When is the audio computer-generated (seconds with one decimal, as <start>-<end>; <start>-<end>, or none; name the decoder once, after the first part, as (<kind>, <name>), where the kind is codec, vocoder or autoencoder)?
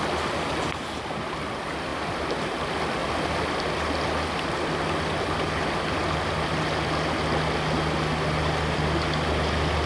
1.9-2.5 (vocoder, BigVGAN v2)